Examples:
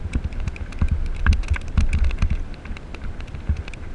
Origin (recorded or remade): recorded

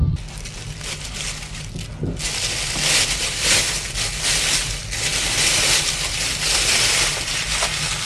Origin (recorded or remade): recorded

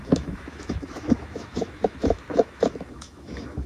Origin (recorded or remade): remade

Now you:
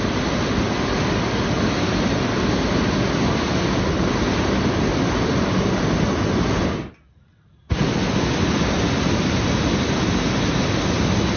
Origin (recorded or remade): recorded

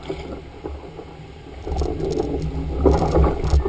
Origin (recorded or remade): recorded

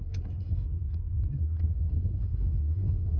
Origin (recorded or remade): remade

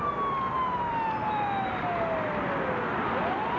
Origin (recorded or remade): recorded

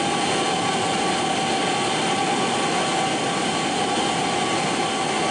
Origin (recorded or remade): recorded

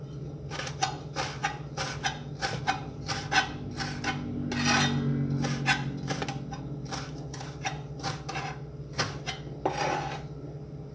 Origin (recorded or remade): recorded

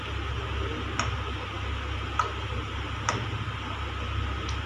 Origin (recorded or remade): recorded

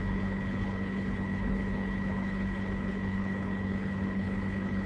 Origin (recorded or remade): remade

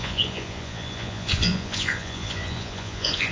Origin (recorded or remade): remade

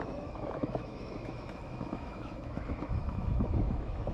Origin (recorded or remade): remade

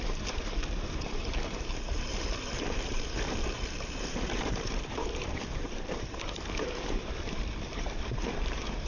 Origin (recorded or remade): remade